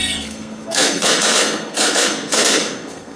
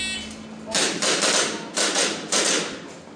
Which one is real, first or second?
second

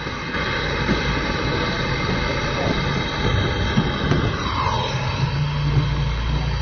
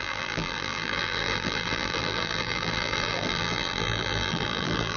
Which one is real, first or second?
first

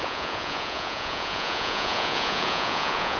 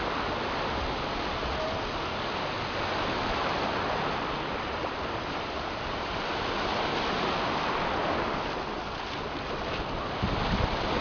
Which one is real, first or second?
second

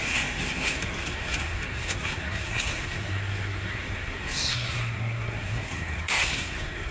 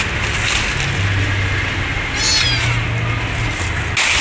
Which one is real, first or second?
second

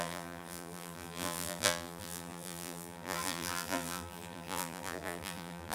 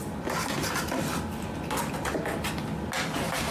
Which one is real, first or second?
second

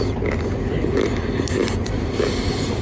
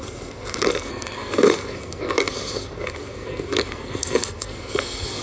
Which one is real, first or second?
first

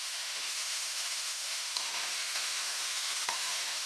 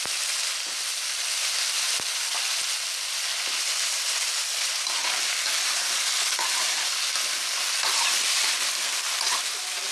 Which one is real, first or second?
second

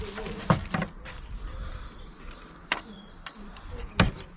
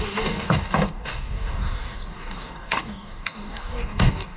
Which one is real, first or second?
first